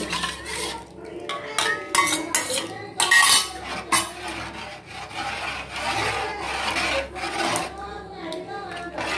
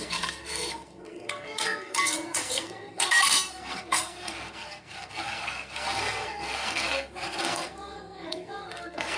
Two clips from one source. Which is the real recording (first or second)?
first